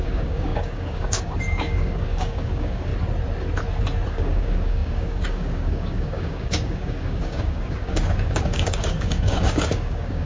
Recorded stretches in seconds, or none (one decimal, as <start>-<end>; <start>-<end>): 2.9-4.1